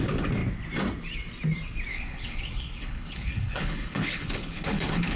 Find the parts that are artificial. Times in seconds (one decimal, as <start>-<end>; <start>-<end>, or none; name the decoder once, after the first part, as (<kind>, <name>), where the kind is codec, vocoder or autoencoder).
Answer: 1.9-5.2 (codec, HILCodec)